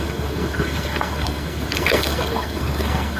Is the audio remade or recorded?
remade